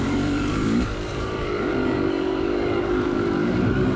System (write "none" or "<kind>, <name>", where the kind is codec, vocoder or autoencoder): codec, DAC